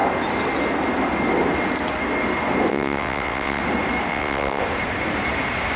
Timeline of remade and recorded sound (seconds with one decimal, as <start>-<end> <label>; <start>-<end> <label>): 0.0-2.7 recorded; 2.7-3.6 remade; 3.6-4.1 recorded; 4.1-4.6 remade; 4.6-5.8 recorded